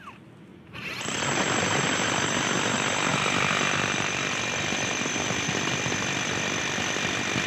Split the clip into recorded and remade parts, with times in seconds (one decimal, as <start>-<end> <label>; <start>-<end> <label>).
0.0-0.5 recorded; 0.5-1.8 remade; 1.8-3.1 recorded; 3.1-6.6 remade; 6.6-7.5 recorded